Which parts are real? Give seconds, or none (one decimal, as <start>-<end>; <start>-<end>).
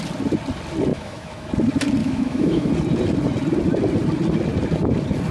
0.0-0.9; 1.5-2.0; 2.7-5.3